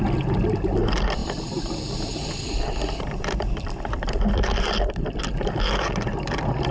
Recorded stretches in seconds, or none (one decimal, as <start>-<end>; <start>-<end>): 0.0-1.2; 5.2-6.7